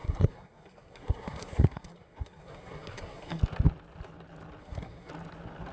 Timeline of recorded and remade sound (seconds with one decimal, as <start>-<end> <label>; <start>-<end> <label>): 0.0-3.4 remade; 3.4-4.6 recorded; 4.6-5.1 remade; 5.1-5.7 recorded